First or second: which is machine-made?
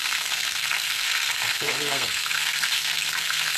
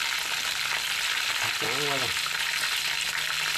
first